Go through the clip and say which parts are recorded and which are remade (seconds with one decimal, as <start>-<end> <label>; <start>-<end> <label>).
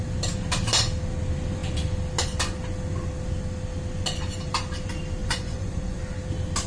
0.0-5.2 recorded; 5.2-6.0 remade; 6.0-6.7 recorded